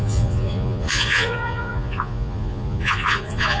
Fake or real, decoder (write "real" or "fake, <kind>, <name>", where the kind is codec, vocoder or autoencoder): fake, vocoder, Vocos